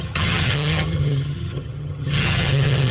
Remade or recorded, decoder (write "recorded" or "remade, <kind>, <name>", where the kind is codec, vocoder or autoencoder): remade, vocoder, HiFi-GAN